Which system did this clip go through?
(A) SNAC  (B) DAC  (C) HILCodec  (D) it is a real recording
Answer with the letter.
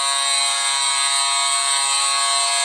D